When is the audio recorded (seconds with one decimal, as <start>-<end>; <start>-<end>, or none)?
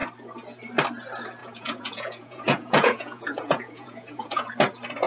0.0-1.4; 4.5-5.1